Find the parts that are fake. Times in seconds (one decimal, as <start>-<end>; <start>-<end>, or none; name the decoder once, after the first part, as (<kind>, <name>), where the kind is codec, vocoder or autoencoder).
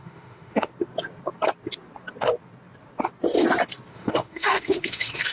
0.0-0.7 (autoencoder, DAC-VAE); 3.9-5.3